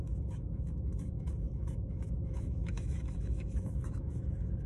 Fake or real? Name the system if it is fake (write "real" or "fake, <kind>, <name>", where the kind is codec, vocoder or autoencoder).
fake, autoencoder, DAC-VAE